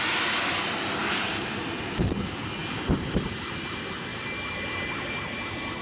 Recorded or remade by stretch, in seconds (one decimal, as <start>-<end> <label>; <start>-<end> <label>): 0.0-1.0 recorded; 1.0-2.1 remade; 2.1-2.6 recorded; 2.6-3.6 remade; 3.6-4.1 recorded; 4.1-4.9 remade; 4.9-5.8 recorded